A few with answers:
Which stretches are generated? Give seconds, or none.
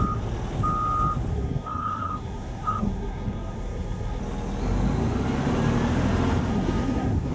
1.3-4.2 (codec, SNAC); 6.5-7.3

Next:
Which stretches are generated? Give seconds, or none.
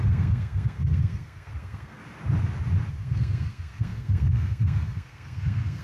0.0-2.0 (codec, SNAC); 2.9-5.8